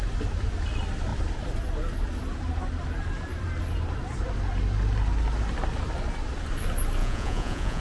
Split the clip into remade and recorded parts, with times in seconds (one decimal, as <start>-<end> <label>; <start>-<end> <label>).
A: 0.0-7.0 recorded; 7.0-7.8 remade